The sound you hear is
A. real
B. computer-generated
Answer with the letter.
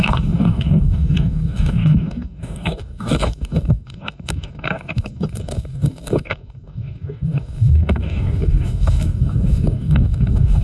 B